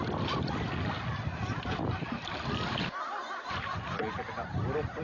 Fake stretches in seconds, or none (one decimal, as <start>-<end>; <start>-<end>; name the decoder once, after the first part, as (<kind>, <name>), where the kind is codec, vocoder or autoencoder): none